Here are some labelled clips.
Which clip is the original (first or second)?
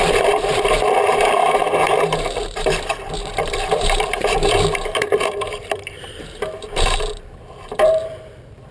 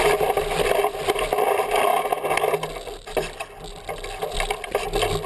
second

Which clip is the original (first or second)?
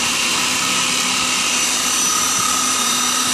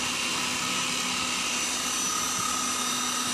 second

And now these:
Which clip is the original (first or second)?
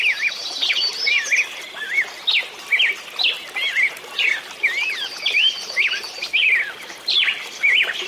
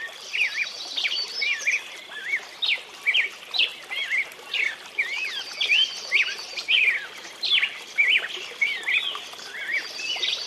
first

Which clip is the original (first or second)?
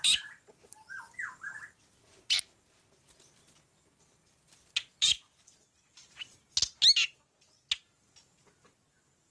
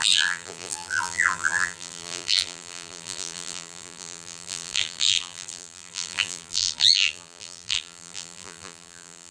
first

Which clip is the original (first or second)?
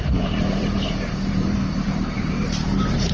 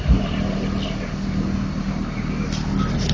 second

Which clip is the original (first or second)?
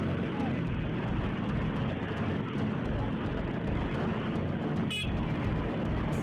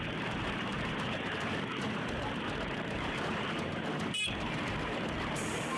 first